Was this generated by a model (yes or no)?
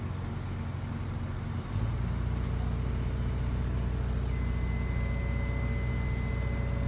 no